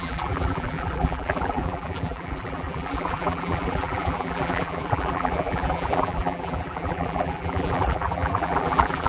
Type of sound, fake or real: fake